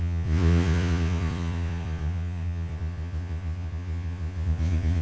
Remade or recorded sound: remade